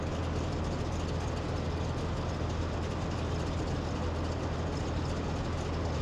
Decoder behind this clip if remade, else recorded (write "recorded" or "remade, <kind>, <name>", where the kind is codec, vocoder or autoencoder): recorded